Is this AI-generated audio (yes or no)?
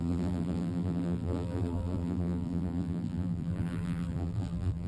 yes